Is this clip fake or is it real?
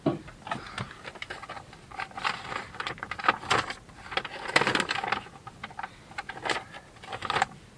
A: real